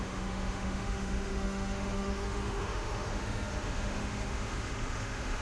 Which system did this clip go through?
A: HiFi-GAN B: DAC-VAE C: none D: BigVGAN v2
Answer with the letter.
B